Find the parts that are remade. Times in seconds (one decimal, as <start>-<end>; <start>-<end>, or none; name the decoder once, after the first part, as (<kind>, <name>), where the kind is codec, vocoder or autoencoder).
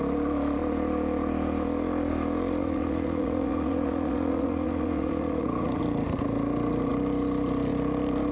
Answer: 2.6-5.8 (vocoder, Vocos)